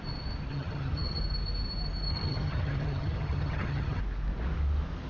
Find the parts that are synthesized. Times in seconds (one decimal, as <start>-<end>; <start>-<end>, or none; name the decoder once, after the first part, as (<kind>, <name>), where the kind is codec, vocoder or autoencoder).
0.5-1.2 (vocoder, HiFi-GAN); 2.1-4.0